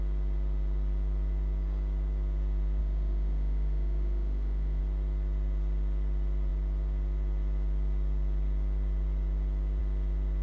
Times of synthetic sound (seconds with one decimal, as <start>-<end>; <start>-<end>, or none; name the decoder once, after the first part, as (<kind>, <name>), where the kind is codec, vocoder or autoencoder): 2.8-4.8 (autoencoder, DAC-VAE)